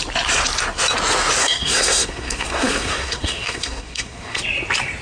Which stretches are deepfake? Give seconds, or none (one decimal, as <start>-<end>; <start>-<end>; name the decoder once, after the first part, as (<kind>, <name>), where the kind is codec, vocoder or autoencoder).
1.4-4.4 (codec, SNAC)